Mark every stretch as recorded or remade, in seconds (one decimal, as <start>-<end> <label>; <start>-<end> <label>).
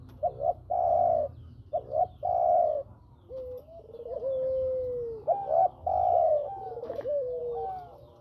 0.0-5.6 recorded; 5.6-7.4 remade; 7.4-8.2 recorded